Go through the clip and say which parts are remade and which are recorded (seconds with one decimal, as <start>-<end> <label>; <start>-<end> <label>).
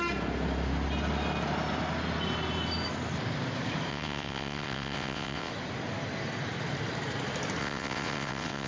0.0-3.9 recorded; 3.9-5.5 remade; 5.5-7.6 recorded; 7.6-8.7 remade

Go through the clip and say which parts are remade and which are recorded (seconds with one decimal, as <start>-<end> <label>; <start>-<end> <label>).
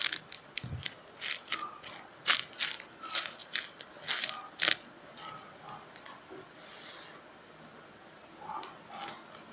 0.0-9.5 recorded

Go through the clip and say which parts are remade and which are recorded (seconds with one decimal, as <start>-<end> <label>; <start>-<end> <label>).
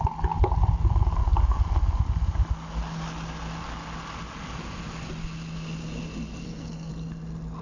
0.0-6.4 recorded; 6.4-6.9 remade; 6.9-7.6 recorded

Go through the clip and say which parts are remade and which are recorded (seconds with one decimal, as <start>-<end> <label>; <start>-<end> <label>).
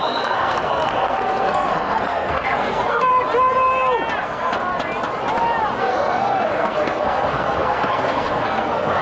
0.0-3.1 remade; 3.1-4.2 recorded; 4.2-4.7 remade; 4.7-5.8 recorded; 5.8-9.0 remade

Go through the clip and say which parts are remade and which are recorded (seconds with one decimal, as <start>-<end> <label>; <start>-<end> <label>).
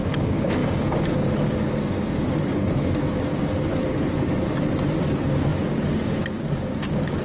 0.0-3.7 remade; 3.7-5.0 recorded; 5.0-7.2 remade